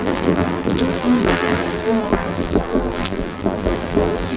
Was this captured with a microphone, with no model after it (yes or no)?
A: no